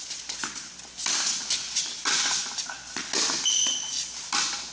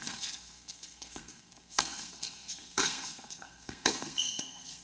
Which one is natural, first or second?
first